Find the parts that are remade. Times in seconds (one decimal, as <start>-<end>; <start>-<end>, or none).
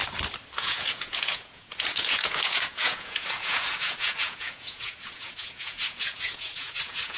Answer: 0.6-7.2